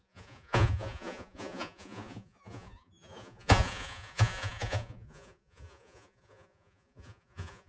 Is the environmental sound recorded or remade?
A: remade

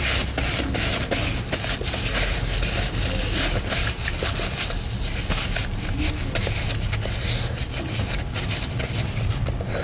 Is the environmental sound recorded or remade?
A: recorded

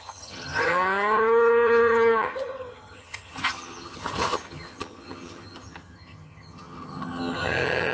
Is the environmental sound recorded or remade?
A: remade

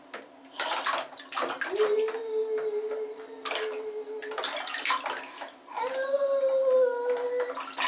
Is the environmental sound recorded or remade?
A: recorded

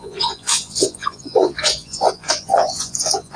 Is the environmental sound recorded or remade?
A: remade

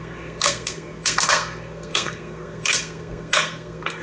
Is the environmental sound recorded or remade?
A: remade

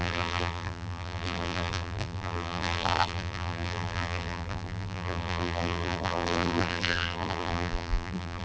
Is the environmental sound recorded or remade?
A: remade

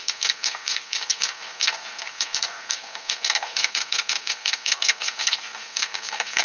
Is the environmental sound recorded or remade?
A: remade